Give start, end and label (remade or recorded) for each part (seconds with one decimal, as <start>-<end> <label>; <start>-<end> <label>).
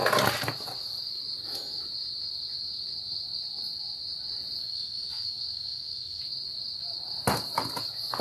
0.0-4.6 recorded; 4.6-6.2 remade; 6.2-8.2 recorded